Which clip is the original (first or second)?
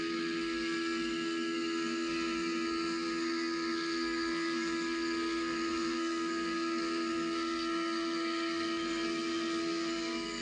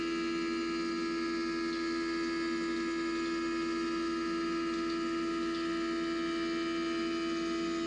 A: second